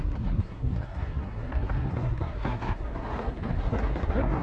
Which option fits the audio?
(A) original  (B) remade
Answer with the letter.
B